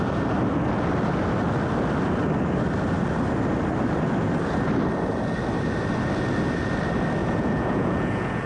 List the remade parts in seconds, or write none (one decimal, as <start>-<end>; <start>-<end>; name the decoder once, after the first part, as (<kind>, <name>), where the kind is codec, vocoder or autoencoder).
7.2-8.5 (vocoder, Vocos)